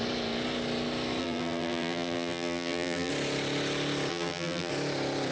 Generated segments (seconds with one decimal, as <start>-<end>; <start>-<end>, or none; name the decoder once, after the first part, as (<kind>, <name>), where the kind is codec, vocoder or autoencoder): 1.2-3.1 (vocoder, BigVGAN v2); 4.1-4.7